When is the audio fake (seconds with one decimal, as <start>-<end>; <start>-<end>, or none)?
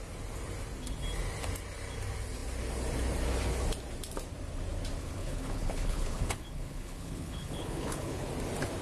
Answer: 5.0-8.3